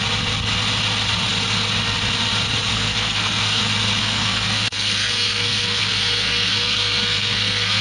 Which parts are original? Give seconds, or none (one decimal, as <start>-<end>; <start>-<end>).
0.0-2.7; 3.6-4.0

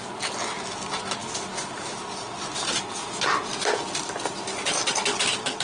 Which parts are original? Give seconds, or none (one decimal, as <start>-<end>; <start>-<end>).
0.0-5.6